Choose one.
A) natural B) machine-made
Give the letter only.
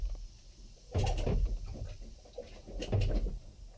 A